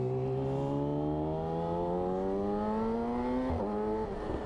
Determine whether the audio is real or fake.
real